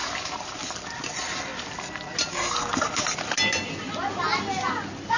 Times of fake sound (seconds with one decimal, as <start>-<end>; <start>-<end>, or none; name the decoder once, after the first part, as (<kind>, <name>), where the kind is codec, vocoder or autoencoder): 0.0-0.6 (vocoder, BigVGAN v2)